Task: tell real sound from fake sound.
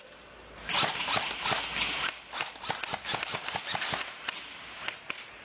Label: real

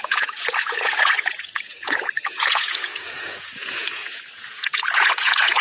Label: fake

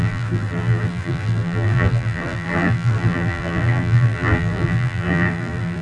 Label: fake